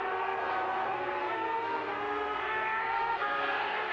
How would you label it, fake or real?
fake